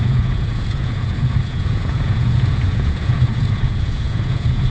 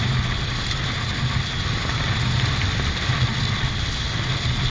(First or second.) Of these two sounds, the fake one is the first